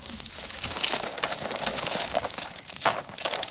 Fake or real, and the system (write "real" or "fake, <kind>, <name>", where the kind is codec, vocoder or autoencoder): fake, codec, DAC